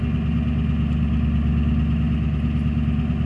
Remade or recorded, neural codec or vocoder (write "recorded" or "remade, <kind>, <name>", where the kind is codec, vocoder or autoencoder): recorded